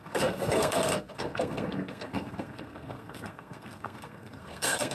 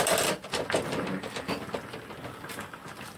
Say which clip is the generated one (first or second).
first